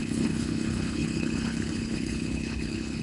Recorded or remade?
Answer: remade